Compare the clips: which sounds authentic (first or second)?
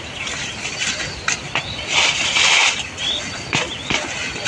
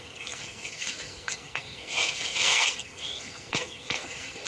first